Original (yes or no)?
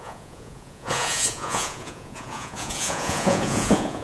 no